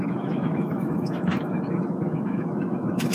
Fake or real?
fake